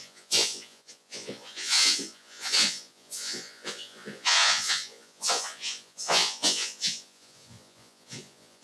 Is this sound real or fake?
fake